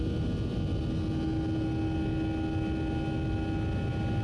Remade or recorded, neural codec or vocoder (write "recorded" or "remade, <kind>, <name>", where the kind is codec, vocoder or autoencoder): recorded